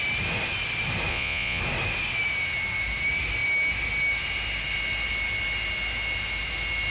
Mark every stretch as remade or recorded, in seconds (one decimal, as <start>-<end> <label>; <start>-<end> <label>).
0.0-1.1 recorded; 1.1-1.6 remade; 1.6-6.9 recorded